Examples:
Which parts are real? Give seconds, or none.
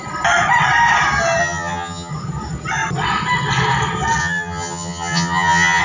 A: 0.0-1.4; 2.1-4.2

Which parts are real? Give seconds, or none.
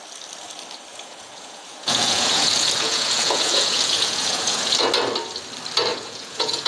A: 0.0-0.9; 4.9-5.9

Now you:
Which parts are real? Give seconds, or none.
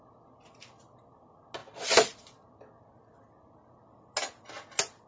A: 0.0-5.1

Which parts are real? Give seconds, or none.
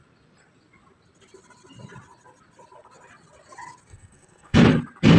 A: 0.0-3.9; 4.6-5.2